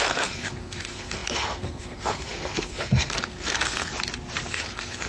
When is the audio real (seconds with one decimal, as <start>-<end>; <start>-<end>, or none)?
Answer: 3.9-4.5